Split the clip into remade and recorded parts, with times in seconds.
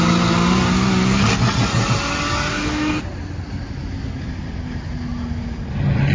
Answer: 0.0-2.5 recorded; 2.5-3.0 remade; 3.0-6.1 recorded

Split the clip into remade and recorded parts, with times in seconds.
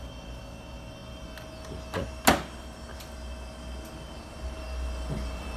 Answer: 0.0-5.6 recorded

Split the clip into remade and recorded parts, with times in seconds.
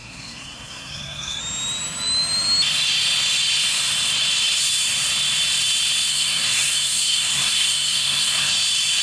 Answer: 0.0-1.4 remade; 1.4-6.1 recorded; 6.1-8.5 remade; 8.5-9.0 recorded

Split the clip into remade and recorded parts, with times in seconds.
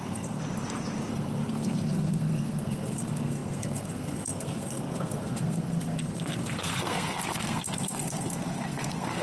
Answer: 0.0-0.4 remade; 0.4-1.1 recorded; 1.1-9.2 remade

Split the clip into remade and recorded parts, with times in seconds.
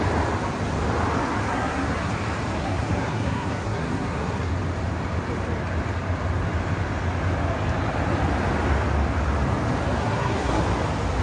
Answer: 0.0-1.5 recorded; 1.5-2.1 remade; 2.1-2.6 recorded; 2.6-4.5 remade; 4.5-10.0 recorded; 10.0-10.6 remade; 10.6-11.2 recorded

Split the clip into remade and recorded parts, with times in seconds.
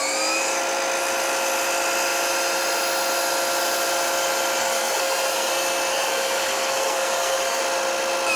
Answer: 0.0-4.6 recorded; 4.6-5.5 remade; 5.5-5.9 recorded; 5.9-7.6 remade; 7.6-8.4 recorded